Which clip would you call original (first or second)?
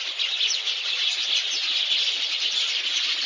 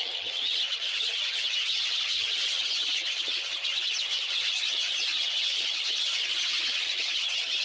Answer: first